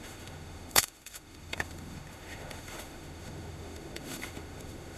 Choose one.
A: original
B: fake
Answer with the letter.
B